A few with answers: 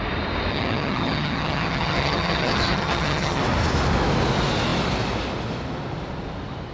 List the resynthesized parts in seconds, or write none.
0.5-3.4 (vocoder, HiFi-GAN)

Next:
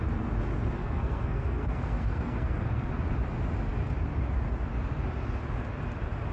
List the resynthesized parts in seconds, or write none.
0.8-2.9 (codec, SNAC)

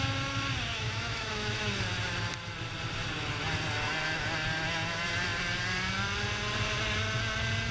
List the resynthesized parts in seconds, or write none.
0.7-1.8 (autoencoder, DAC-VAE)

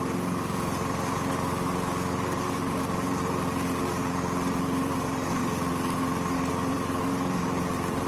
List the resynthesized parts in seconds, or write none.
0.0-5.4 (vocoder, BigVGAN v2); 6.5-8.1